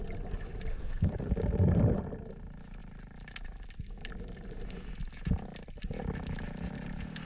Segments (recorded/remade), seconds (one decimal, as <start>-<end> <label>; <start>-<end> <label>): 0.0-0.7 recorded; 0.7-1.3 remade; 1.3-7.3 recorded